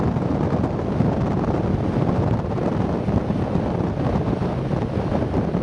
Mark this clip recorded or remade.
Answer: recorded